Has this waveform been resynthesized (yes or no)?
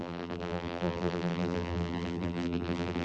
yes